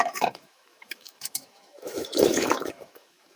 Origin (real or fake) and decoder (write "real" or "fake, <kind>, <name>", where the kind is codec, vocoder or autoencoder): fake, autoencoder, DAC-VAE